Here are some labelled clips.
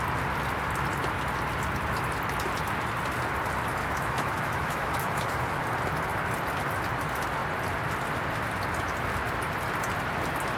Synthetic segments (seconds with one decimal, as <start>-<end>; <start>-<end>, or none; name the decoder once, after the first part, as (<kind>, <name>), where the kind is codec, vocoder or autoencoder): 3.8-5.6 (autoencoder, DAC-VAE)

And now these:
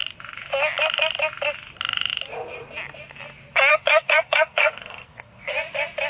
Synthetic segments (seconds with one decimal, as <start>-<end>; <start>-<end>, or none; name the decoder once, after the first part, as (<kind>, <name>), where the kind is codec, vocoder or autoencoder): 3.7-5.5 (codec, SNAC)

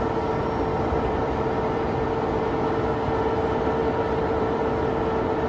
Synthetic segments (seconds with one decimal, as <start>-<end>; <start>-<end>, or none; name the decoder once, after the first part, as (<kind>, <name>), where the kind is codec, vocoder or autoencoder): 0.7-2.1 (vocoder, BigVGAN v2); 3.8-4.9

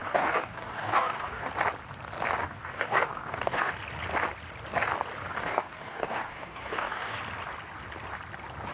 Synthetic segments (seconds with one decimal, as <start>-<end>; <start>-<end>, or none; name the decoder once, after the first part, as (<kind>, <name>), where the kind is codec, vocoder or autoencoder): 0.0-1.5 (codec, DAC); 2.4-3.7; 5.3-7.2

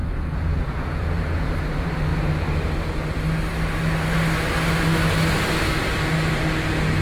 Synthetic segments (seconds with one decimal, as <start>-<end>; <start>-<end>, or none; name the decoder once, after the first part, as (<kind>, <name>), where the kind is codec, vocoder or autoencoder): 0.0-1.5 (vocoder, Vocos)